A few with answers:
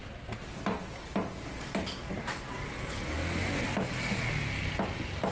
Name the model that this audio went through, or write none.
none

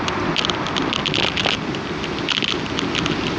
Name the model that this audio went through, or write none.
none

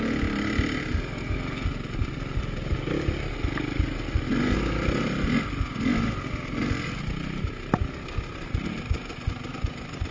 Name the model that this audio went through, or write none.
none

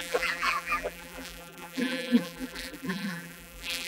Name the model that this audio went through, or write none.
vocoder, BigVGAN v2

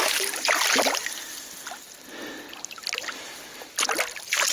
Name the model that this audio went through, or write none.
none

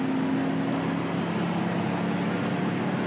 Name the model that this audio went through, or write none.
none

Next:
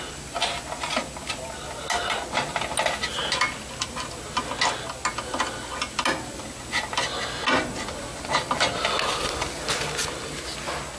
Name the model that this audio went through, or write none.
none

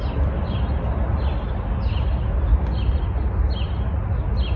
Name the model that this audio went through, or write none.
none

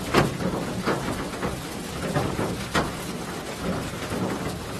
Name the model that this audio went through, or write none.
none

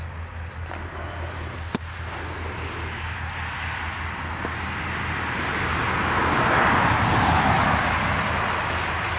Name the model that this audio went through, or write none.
none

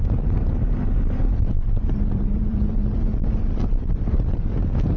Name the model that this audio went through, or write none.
vocoder, BigVGAN v2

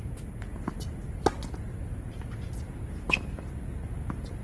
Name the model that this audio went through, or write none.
none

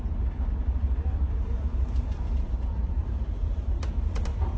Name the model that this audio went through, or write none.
vocoder, BigVGAN v2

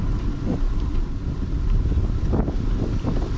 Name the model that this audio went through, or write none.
none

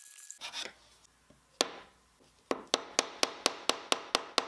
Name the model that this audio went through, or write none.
none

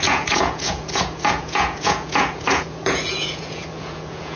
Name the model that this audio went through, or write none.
vocoder, Vocos